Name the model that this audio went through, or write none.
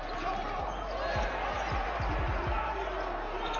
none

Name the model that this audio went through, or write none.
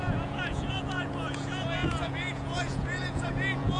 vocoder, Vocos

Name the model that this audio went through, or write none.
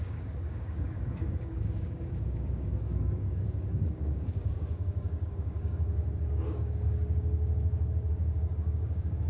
codec, DAC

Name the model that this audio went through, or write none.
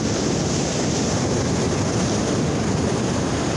none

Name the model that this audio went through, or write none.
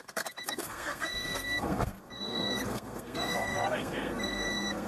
codec, SNAC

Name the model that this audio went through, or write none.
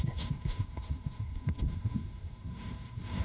codec, SNAC